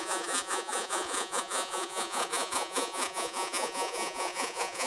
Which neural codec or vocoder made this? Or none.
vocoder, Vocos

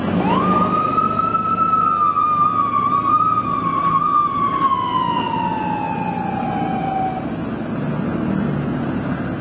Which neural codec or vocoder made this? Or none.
none